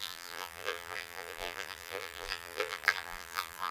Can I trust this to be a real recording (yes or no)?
no